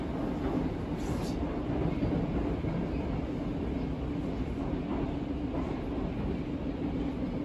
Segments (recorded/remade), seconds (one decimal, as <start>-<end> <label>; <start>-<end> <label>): 0.0-7.4 recorded